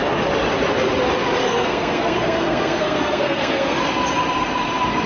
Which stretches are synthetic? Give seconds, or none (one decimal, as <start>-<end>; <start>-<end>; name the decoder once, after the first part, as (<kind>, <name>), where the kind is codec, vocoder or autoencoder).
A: 1.4-3.8 (codec, SNAC)